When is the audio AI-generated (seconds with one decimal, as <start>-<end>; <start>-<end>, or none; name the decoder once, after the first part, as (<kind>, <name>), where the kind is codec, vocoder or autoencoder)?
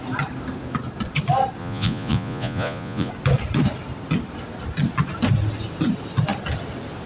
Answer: 1.6-3.1 (vocoder, Vocos)